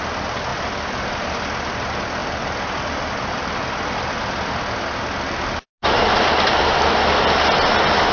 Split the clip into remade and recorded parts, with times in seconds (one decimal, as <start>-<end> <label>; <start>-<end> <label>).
0.0-2.2 recorded; 2.2-4.2 remade; 4.2-8.1 recorded